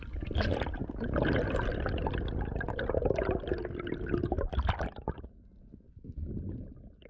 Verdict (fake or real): real